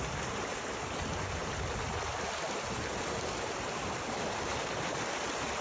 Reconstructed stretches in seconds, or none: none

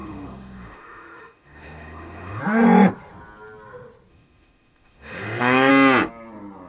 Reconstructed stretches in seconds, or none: 0.0-2.4 (autoencoder, DAC-VAE); 4.1-5.7